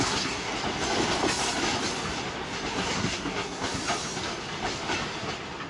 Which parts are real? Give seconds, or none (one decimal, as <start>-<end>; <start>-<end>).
0.5-2.7; 3.8-5.7